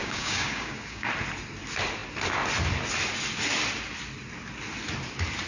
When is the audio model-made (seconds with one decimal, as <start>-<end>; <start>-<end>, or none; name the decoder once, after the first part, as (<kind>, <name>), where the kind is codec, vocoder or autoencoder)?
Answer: 0.0-1.1 (codec, DAC)